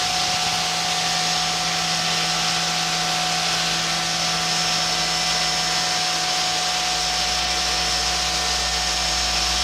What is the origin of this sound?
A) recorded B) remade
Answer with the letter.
A